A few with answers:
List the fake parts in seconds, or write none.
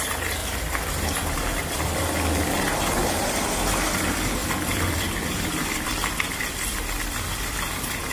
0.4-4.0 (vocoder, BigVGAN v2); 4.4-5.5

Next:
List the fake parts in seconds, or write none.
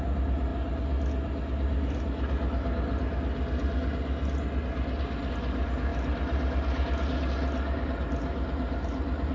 none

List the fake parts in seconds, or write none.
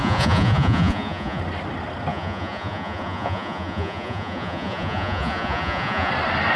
0.0-1.4 (vocoder, Vocos); 2.1-6.1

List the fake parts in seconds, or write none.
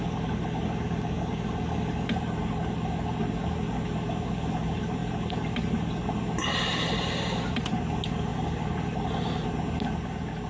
none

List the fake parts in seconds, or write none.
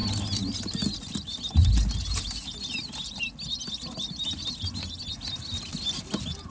none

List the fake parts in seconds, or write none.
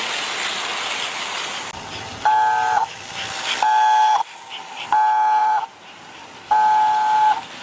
5.4-6.0 (vocoder, BigVGAN v2)